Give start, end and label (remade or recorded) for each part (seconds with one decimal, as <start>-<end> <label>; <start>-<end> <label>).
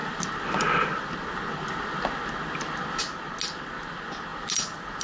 0.0-5.0 recorded